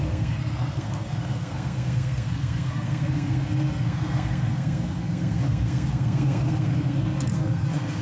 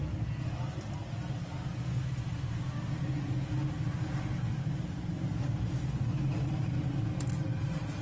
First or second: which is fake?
first